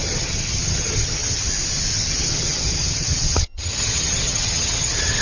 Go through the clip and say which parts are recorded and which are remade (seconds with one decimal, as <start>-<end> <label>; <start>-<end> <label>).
0.0-1.5 remade; 1.5-1.9 recorded; 1.9-5.2 remade